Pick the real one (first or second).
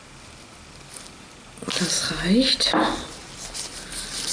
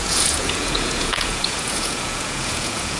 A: first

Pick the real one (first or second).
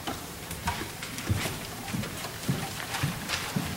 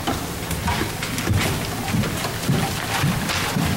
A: second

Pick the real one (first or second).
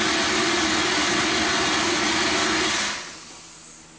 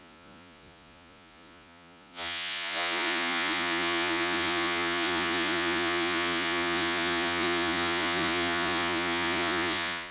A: first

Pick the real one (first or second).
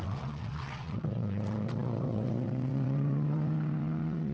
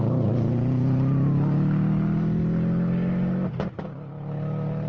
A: second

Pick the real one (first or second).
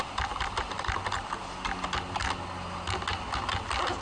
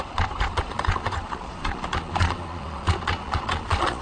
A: first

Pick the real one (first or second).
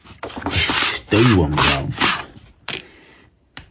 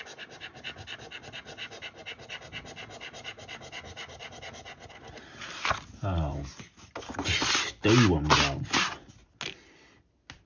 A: second